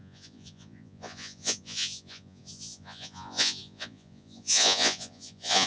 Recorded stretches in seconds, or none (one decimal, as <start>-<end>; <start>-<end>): none